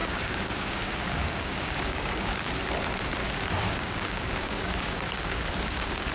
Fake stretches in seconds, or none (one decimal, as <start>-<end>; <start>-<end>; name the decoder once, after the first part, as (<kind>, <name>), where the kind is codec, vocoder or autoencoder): 0.0-2.5 (codec, DAC); 3.2-6.1

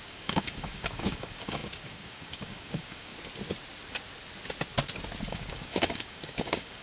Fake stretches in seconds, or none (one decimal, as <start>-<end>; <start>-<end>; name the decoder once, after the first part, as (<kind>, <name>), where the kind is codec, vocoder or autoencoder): 0.0-3.1 (codec, DAC); 5.3-6.8

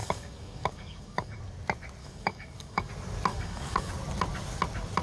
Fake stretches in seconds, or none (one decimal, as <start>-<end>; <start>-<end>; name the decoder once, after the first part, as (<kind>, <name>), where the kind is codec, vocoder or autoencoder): 0.0-1.4 (codec, DAC); 2.0-2.9; 3.3-3.9

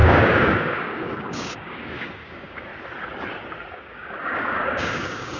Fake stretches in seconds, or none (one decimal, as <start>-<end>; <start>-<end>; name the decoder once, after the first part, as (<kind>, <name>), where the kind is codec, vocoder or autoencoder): 0.0-2.7 (codec, DAC); 3.7-5.4

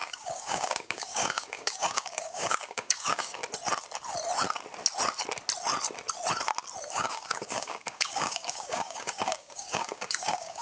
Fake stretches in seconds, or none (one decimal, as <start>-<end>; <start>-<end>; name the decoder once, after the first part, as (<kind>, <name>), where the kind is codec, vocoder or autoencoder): 0.0-3.4 (codec, DAC); 6.9-10.6

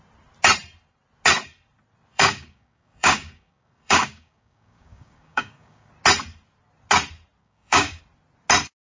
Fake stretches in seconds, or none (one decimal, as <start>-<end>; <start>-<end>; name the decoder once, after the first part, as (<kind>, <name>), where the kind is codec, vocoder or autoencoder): 2.1-5.9 (codec, DAC); 7.4-8.0

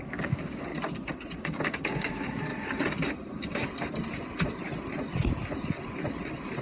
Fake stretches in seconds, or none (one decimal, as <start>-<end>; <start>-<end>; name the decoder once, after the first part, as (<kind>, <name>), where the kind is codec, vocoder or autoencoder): 0.0-0.7 (codec, DAC); 1.4-2.5